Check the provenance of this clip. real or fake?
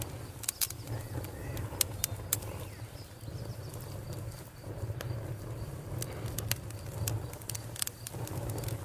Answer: real